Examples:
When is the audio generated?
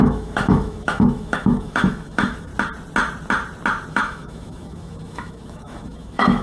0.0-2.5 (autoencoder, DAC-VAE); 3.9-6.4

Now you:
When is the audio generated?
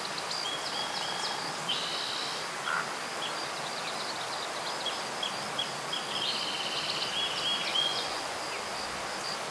7.7-8.4 (vocoder, Vocos)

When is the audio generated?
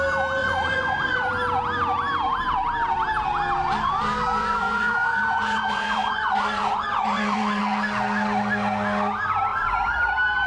0.4-1.3 (vocoder, Vocos); 4.4-7.6; 9.5-10.1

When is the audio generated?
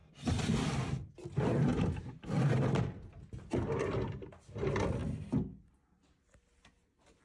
1.7-2.8 (vocoder, BigVGAN v2)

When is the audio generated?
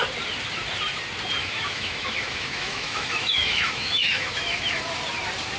1.4-4.8 (autoencoder, DAC-VAE)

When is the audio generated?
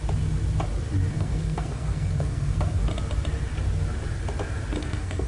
1.1-2.8 (codec, SNAC); 4.8-5.3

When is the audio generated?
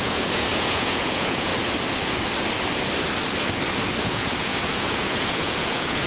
0.0-1.5 (vocoder, Vocos); 4.0-6.1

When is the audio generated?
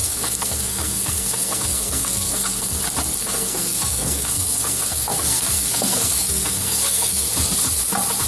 0.0-2.8 (codec, SNAC); 3.2-7.3